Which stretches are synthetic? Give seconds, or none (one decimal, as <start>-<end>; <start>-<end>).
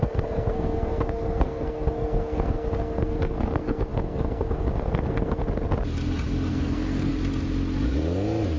0.0-5.4; 6.5-7.1